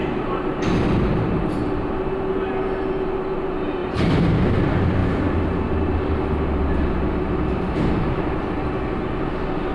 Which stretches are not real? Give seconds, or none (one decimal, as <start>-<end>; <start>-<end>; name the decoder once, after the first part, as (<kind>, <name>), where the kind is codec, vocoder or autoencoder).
3.8-4.4 (vocoder, BigVGAN v2)